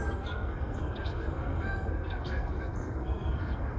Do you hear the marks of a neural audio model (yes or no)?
yes